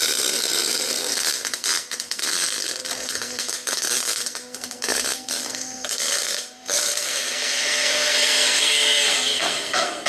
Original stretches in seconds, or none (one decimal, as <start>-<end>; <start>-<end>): none